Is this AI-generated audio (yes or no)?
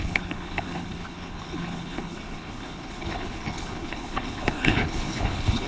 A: yes